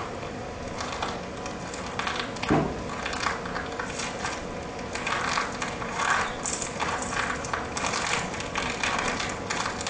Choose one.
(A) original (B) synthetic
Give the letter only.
A